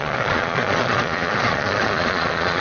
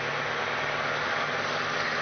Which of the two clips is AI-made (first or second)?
first